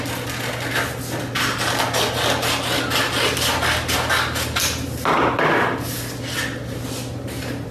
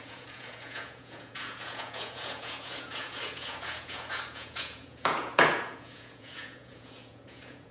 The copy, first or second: second